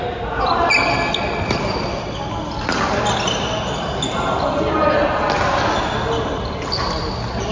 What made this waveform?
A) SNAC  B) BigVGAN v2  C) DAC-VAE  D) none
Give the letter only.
D